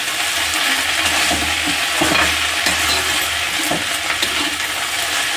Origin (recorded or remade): recorded